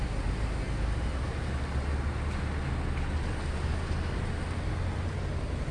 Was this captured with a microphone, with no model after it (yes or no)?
yes